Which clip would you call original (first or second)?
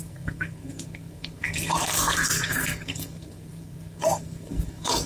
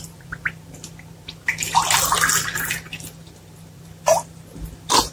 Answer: second